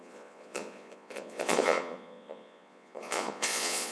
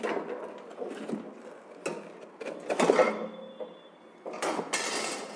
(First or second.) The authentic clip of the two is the second